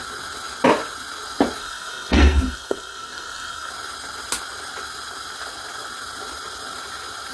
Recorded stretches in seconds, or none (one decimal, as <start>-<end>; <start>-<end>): 0.0-1.6; 3.7-7.3